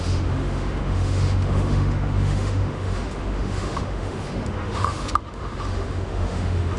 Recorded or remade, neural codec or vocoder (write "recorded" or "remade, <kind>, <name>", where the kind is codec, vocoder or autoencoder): remade, autoencoder, DAC-VAE